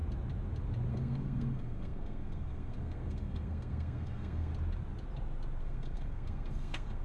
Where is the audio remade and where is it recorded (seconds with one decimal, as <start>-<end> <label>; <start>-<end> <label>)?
0.0-0.9 recorded; 0.9-4.5 remade; 4.5-5.6 recorded; 5.6-7.0 remade